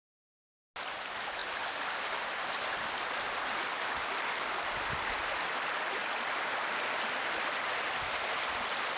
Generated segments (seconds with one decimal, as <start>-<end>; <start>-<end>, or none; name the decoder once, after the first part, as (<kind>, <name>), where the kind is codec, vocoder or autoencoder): none